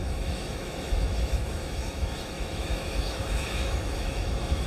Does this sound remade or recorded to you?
remade